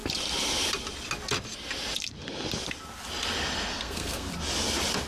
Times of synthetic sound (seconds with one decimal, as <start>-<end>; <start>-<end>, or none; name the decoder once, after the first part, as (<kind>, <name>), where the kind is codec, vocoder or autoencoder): 3.7-4.3 (codec, SNAC)